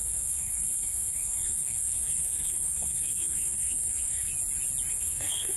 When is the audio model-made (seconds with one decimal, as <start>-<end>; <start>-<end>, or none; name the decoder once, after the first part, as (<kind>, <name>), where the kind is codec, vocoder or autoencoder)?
0.0-4.3 (codec, SNAC); 4.9-5.6